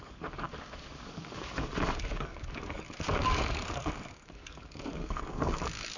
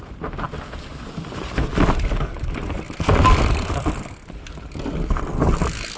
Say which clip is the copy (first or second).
first